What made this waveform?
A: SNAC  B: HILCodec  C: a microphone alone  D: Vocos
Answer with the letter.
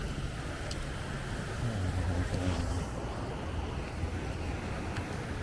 C